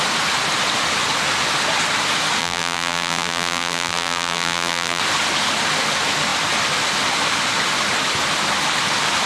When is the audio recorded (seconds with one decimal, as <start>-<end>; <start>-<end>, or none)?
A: 0.0-2.4; 5.0-9.3